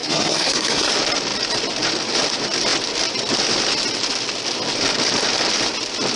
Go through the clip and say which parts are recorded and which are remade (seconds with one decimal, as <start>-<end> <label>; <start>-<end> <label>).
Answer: 0.0-0.9 remade; 0.9-6.2 recorded